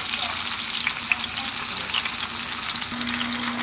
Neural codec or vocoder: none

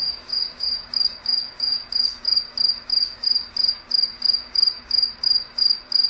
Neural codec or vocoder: codec, DAC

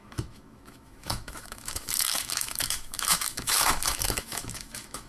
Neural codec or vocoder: autoencoder, DAC-VAE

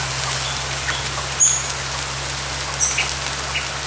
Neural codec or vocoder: none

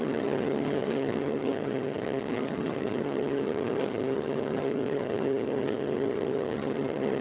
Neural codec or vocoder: vocoder, HiFi-GAN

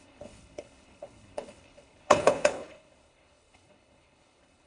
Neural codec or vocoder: codec, HILCodec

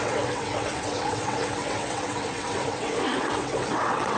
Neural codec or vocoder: vocoder, WaveNeXt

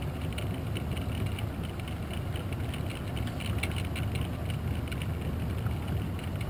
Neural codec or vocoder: none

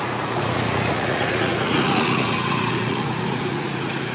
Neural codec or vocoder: vocoder, Vocos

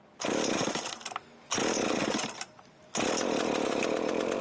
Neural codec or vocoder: none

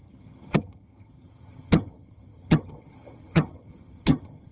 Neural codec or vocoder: vocoder, HiFi-GAN